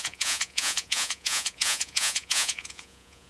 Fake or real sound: fake